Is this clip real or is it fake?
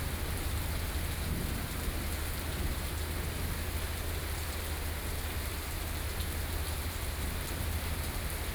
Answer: real